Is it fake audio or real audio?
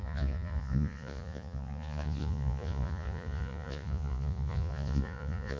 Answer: fake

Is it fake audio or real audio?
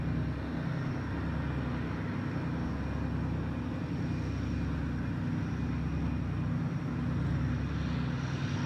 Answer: real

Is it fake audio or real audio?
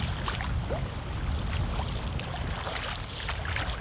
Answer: real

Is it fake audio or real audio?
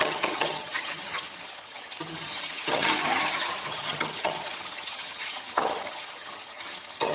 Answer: fake